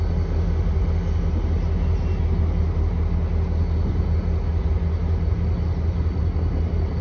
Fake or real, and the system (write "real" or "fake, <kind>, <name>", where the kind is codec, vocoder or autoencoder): real